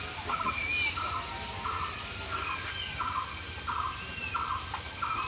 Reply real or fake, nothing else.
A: real